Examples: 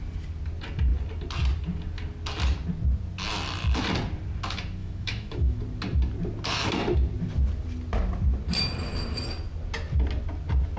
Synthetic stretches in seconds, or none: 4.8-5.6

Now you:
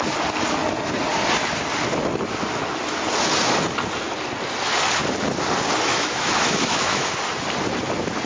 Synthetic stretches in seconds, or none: 5.9-7.1

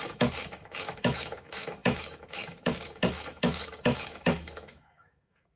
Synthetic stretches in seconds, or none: 0.0-5.6

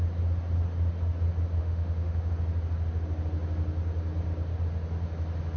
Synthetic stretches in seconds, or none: 1.6-2.3